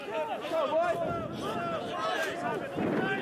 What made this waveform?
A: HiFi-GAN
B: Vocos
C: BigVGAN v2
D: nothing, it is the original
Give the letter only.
D